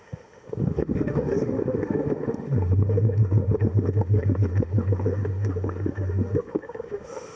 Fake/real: fake